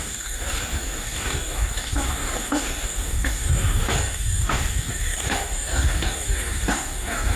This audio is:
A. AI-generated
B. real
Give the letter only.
A